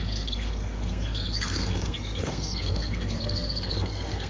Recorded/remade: remade